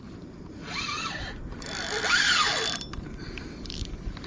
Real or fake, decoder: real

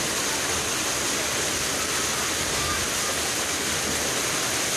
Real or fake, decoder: real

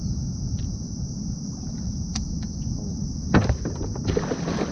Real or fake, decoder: real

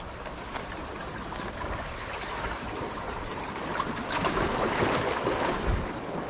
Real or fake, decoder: fake, vocoder, BigVGAN v2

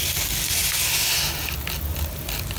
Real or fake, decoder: real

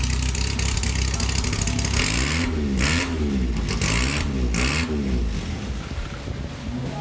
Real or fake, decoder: real